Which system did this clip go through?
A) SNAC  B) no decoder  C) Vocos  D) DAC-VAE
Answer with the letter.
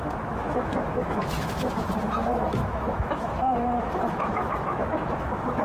D